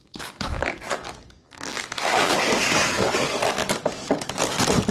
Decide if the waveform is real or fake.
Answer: fake